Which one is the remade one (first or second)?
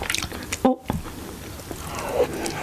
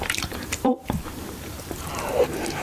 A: second